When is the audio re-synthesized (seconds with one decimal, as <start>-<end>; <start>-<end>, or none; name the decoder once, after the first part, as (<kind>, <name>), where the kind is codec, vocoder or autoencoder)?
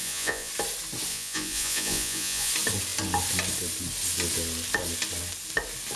0.0-0.5 (vocoder, Vocos); 1.1-2.5